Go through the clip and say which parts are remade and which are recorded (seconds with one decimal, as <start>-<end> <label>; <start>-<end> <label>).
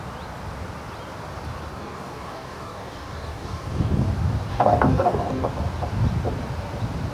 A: 0.0-1.7 recorded; 1.7-4.1 remade; 4.1-4.5 recorded; 4.5-5.5 remade; 5.5-7.1 recorded